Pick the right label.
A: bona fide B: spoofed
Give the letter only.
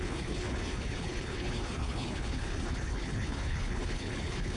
B